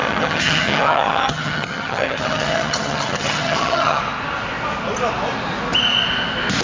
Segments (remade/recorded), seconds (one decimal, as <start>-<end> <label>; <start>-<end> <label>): 0.0-4.0 remade; 4.0-6.6 recorded

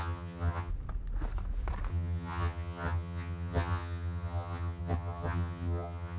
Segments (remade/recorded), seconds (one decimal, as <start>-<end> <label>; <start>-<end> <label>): 0.0-0.7 remade; 0.7-1.9 recorded; 1.9-6.2 remade

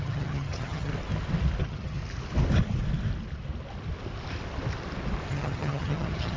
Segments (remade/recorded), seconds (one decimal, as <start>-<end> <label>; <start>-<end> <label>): 0.0-0.9 remade; 0.9-1.6 recorded; 1.6-2.0 remade; 2.0-5.3 recorded; 5.3-6.4 remade

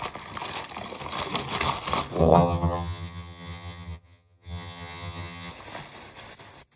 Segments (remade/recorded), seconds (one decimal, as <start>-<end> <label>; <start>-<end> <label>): 0.0-2.2 recorded; 2.2-5.5 remade; 5.5-6.8 recorded

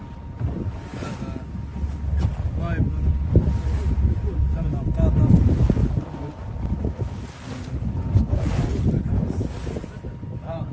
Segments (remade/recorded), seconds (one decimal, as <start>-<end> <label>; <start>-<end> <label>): 0.0-10.7 recorded